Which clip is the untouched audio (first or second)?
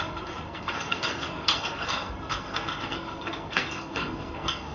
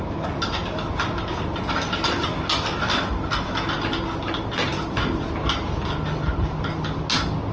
second